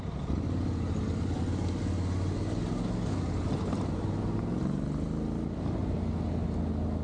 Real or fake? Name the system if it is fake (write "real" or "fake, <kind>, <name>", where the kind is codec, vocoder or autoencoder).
real